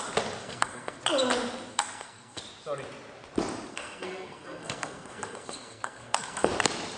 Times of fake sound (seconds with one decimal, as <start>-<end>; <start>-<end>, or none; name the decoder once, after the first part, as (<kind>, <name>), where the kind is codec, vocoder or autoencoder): 0.4-1.0 (codec, SNAC); 1.7-2.4; 3.7-6.5